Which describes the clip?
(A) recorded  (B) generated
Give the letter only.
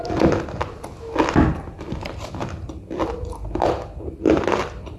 A